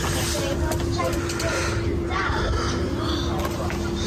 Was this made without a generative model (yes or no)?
yes